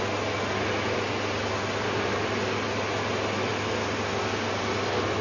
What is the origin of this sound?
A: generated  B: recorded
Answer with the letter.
B